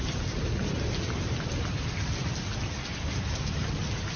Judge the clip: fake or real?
real